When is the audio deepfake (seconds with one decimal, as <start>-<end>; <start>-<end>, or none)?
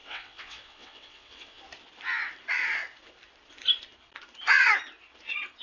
0.0-1.6